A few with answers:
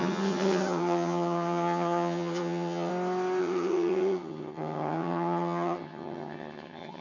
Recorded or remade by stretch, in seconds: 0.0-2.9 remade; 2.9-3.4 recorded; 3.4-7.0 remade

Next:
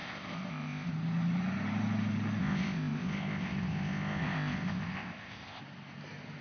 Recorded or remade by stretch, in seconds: 0.0-0.9 remade; 0.9-2.4 recorded; 2.4-5.6 remade; 5.6-6.4 recorded

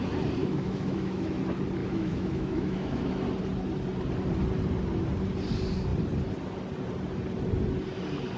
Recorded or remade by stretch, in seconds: 0.0-0.4 recorded; 0.4-1.4 remade; 1.4-1.8 recorded; 1.8-3.2 remade; 3.2-8.4 recorded